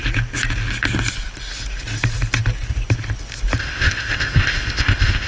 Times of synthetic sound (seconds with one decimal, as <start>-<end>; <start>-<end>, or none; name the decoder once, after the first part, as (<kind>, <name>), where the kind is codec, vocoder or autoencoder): 3.6-5.3 (codec, ZipCodec)